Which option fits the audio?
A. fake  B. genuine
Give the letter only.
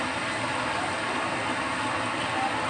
B